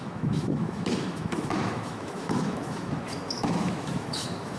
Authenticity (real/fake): fake